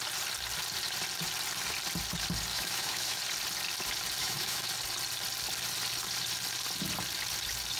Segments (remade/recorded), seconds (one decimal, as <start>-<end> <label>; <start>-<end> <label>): 0.0-2.5 recorded; 2.5-3.2 remade; 3.2-4.2 recorded; 4.2-4.7 remade; 4.7-7.8 recorded